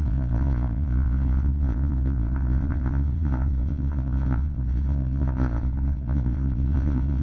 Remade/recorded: remade